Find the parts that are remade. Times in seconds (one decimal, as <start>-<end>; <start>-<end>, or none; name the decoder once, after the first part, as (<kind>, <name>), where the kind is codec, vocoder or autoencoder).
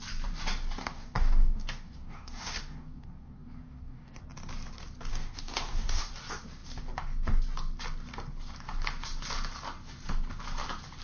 0.8-4.2 (codec, DAC); 5.1-6.1